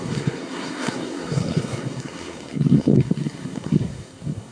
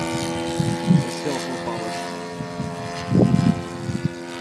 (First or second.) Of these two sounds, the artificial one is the first